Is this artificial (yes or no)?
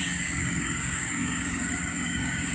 yes